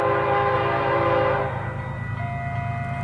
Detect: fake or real real